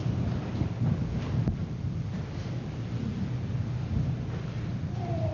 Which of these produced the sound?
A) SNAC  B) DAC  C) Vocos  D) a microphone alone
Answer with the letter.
D